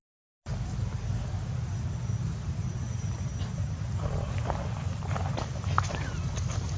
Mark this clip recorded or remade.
recorded